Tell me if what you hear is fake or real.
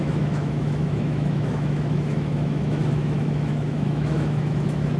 fake